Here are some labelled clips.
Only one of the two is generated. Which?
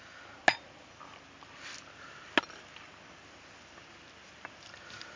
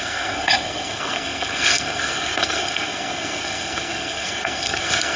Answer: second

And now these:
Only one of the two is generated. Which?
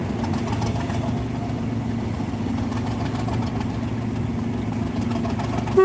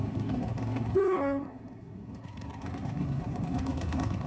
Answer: second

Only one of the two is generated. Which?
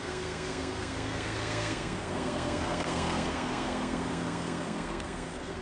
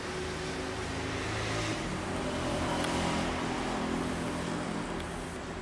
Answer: first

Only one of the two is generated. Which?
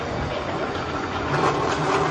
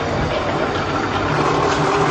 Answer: first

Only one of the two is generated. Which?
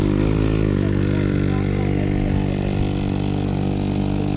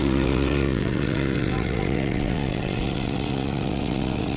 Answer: second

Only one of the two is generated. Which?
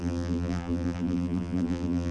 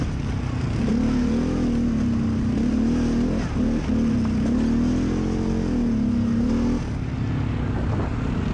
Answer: first